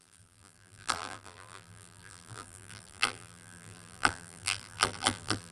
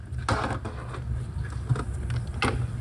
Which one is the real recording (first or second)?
second